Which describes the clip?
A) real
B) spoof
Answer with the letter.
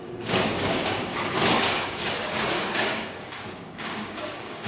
B